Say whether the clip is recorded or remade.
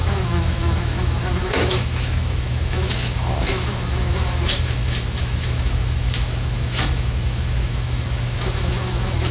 remade